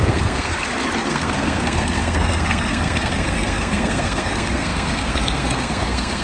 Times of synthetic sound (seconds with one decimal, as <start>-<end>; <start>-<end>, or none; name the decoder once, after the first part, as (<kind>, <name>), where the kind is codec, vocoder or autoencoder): 0.0-0.5 (codec, SNAC); 1.1-6.2